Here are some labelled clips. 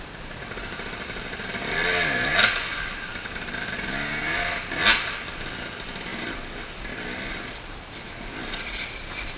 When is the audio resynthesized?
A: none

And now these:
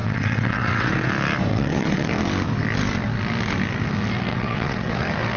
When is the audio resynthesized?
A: 0.0-1.1 (vocoder, WaveNeXt); 1.5-2.1; 4.3-5.0

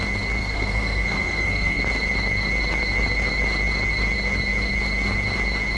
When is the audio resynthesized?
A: 0.4-1.8 (codec, SNAC)

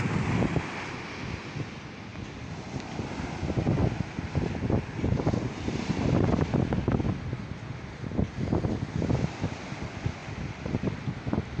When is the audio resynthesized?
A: none